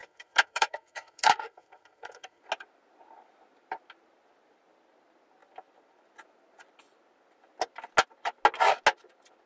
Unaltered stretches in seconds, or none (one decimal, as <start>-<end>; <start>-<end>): 2.4-9.5